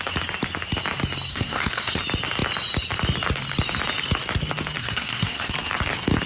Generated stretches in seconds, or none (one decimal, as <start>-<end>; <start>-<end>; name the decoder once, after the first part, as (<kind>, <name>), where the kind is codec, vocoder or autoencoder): 1.3-2.0 (codec, SNAC); 4.8-5.5